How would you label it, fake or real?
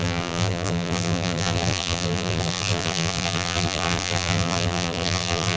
fake